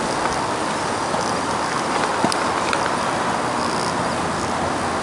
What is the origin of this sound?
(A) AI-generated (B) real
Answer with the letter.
B